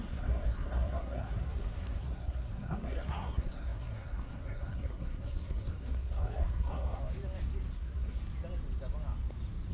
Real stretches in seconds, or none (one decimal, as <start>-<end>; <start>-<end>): 7.0-7.7; 8.2-9.7